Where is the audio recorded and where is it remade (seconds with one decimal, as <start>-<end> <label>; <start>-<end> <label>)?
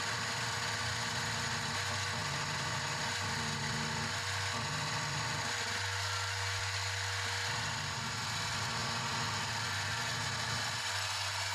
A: 0.0-11.5 recorded